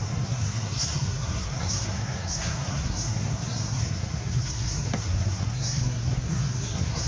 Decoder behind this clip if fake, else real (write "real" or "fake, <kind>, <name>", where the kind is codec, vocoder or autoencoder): fake, codec, SNAC